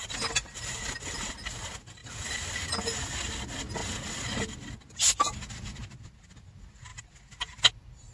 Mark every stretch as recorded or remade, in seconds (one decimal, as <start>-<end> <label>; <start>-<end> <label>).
0.0-8.1 recorded